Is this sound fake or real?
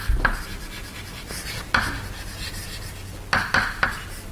real